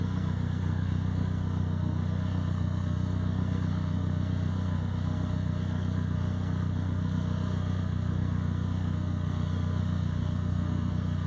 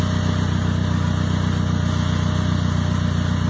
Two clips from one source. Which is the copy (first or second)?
first